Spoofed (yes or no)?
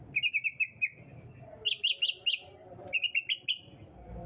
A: no